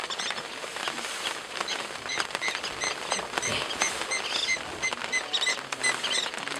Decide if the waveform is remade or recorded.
recorded